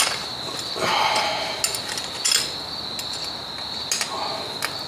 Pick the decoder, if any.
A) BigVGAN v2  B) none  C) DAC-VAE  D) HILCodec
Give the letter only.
B